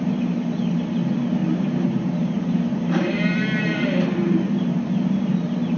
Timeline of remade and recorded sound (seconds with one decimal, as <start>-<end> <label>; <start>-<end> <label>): 0.0-1.4 recorded; 1.4-4.8 remade; 4.8-5.8 recorded